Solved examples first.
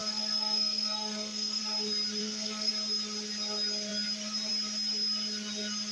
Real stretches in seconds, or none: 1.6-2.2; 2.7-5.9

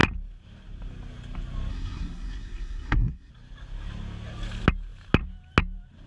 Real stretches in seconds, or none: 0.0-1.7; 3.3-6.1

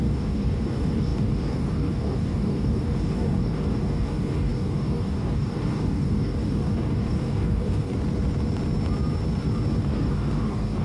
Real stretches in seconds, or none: 7.9-9.8

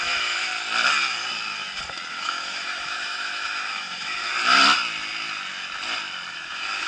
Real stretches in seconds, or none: 0.5-2.1; 4.3-6.3

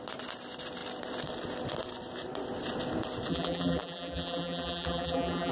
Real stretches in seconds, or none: 0.0-3.3